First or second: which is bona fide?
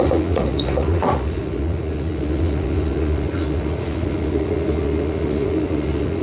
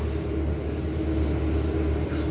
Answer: second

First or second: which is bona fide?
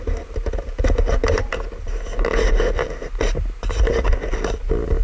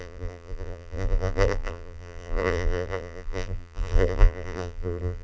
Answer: first